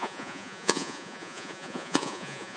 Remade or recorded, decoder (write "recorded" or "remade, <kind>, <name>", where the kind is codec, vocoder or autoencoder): remade, vocoder, Vocos